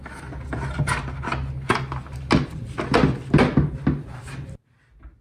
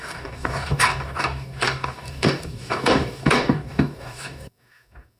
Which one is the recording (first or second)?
first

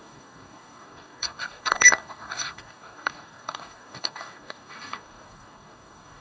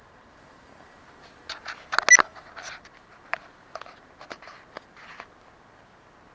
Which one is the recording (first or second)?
second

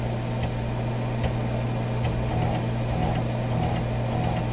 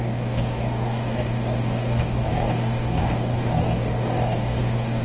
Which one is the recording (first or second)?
first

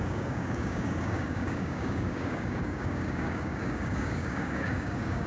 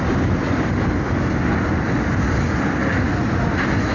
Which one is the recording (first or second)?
second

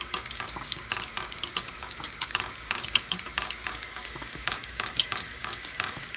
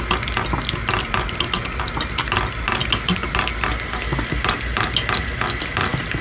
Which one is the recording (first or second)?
second